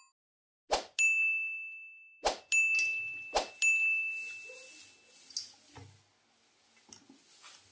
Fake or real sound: real